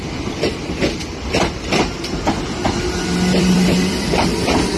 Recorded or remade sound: remade